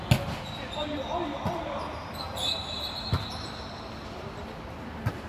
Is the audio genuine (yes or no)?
yes